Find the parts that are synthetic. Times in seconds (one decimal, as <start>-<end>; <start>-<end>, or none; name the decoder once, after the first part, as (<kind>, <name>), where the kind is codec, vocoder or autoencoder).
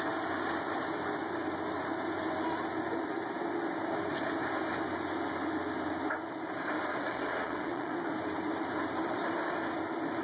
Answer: 6.9-8.0 (vocoder, WaveNeXt)